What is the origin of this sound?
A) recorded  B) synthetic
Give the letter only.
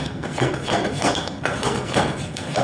B